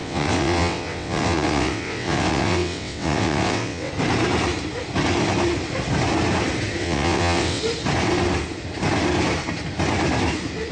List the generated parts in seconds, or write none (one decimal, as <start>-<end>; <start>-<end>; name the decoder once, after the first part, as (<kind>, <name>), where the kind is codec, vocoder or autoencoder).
0.0-3.9 (vocoder, WaveNeXt); 6.8-7.6